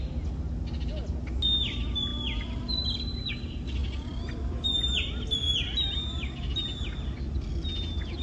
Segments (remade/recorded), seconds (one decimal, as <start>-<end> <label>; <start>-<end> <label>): 0.0-2.1 recorded; 2.1-3.3 remade; 3.3-8.2 recorded